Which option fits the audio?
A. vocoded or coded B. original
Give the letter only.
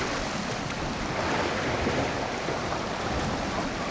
B